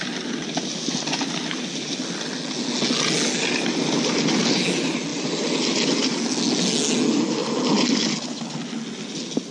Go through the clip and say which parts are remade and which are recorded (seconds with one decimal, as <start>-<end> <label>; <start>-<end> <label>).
0.0-5.1 recorded; 5.1-6.1 remade; 6.1-7.4 recorded; 7.4-8.0 remade; 8.0-9.5 recorded